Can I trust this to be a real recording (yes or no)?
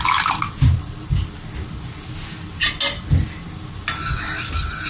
yes